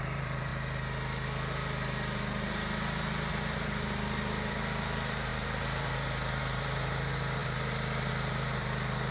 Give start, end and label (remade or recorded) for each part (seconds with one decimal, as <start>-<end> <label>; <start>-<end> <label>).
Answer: 0.0-0.5 remade; 0.5-3.3 recorded; 3.3-9.1 remade